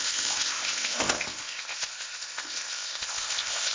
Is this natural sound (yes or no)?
no